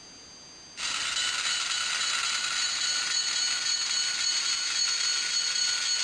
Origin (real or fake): real